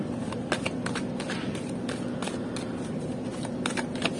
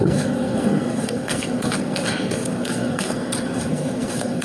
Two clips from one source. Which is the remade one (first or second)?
second